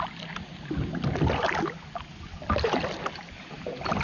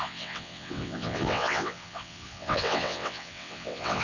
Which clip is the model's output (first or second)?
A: second